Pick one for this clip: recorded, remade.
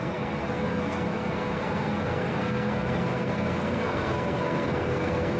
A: remade